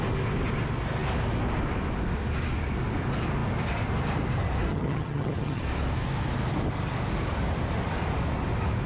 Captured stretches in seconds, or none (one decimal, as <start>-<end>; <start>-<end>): 0.0-4.7; 5.6-8.9